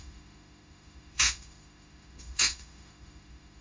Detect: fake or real fake